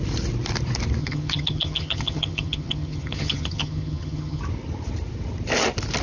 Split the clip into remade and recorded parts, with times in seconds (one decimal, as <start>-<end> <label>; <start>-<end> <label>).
0.0-1.0 recorded; 1.0-4.4 remade; 4.4-6.0 recorded